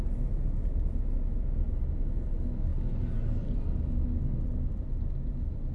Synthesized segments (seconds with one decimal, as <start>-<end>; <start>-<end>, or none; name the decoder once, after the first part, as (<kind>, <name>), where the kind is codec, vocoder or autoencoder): none

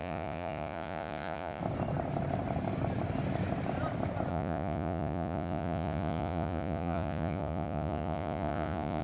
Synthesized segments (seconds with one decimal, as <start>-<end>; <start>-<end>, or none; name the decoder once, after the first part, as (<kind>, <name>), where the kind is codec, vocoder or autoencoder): 0.0-1.6 (vocoder, Vocos); 4.3-9.0

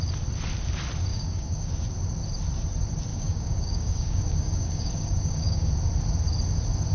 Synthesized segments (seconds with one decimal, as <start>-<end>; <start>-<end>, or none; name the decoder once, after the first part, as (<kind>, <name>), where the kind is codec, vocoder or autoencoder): 1.1-1.7 (codec, DAC); 3.1-5.7

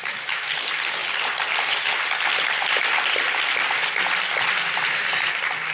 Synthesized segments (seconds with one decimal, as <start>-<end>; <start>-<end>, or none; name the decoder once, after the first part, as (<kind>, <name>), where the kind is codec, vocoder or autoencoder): 0.0-0.5 (autoencoder, DAC-VAE)

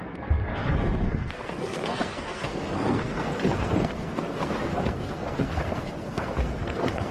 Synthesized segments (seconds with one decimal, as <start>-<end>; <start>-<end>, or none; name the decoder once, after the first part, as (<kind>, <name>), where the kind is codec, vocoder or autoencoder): 0.0-7.1 (codec, SNAC)

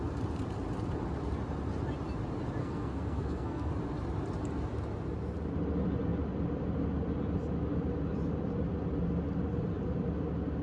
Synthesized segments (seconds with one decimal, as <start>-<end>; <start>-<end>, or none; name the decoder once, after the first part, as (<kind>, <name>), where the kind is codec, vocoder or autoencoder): 2.6-3.7 (codec, SNAC)

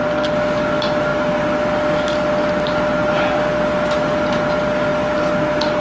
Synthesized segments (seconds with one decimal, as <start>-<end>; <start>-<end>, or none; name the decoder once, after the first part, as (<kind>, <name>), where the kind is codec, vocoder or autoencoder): none